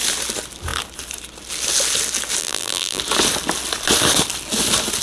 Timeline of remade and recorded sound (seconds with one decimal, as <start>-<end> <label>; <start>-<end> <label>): 0.0-2.4 recorded; 2.4-3.0 remade; 3.0-5.0 recorded